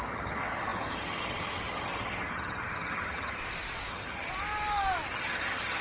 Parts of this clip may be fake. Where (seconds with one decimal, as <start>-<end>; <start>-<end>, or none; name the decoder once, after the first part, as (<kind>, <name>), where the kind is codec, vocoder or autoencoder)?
0.0-3.4 (vocoder, HiFi-GAN); 3.9-4.3; 5.1-5.8